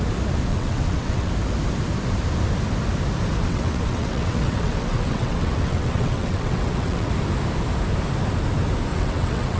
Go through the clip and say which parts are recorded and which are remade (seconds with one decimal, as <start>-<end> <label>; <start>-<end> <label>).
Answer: 0.0-0.5 recorded; 0.5-1.3 remade; 1.3-3.4 recorded; 3.4-7.1 remade; 7.1-8.9 recorded; 8.9-9.6 remade